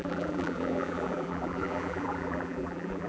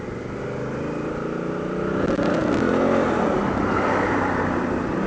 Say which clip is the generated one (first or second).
first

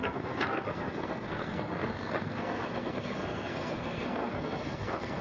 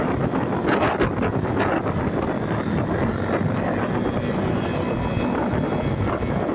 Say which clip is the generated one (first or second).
first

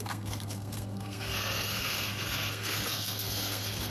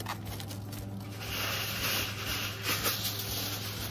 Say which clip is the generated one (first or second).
first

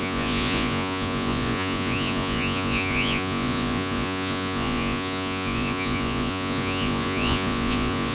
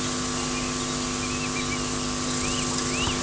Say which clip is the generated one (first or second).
first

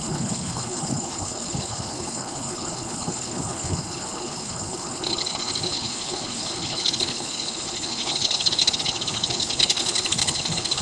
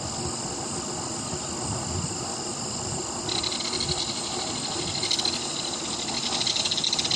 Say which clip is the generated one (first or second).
first